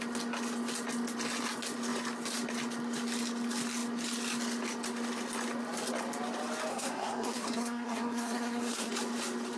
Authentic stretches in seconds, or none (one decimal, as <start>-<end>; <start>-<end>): 0.0-6.7; 8.9-9.6